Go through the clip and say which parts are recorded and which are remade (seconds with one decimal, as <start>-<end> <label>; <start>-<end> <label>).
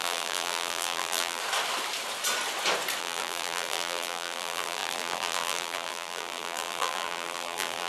0.0-1.4 remade; 1.4-3.0 recorded; 3.0-7.9 remade